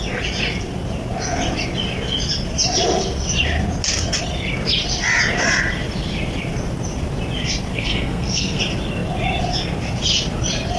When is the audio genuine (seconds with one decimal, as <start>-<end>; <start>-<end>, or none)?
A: 0.0-7.7; 8.6-10.8